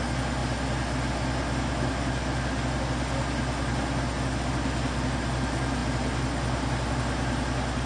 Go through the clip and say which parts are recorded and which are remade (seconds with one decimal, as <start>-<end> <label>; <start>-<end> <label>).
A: 0.0-7.9 recorded